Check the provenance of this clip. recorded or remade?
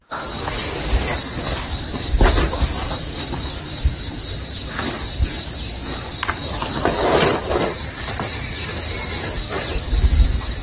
remade